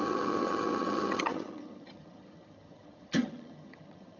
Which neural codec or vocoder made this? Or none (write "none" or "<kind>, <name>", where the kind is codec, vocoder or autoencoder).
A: vocoder, HiFi-GAN